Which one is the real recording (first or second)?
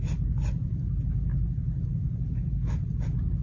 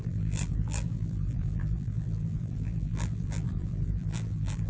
first